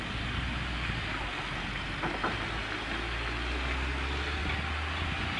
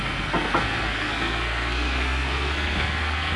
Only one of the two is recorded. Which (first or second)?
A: first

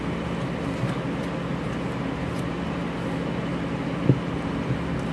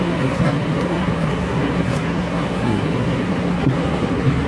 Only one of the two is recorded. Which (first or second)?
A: first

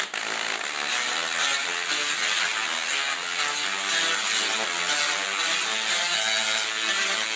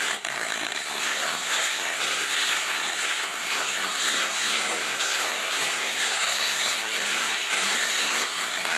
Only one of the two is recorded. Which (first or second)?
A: first